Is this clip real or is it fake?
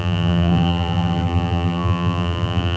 fake